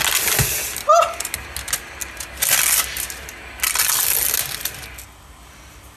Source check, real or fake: real